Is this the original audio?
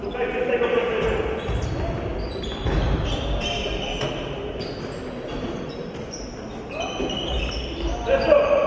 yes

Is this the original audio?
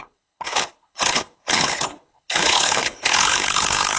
no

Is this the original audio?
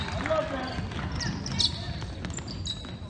yes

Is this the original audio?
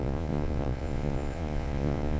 no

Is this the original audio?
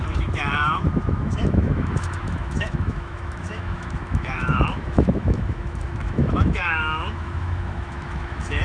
no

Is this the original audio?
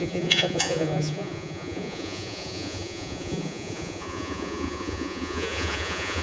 no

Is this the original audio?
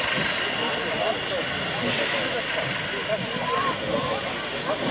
yes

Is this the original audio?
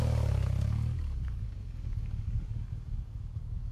no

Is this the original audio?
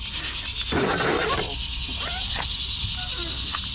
yes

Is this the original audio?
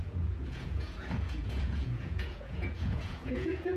no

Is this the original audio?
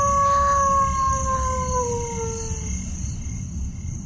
yes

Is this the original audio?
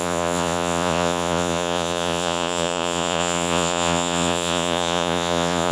no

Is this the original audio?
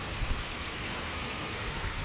no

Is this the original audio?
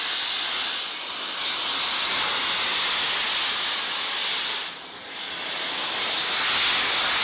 yes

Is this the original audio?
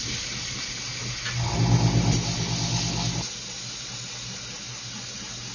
yes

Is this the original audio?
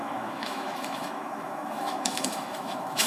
no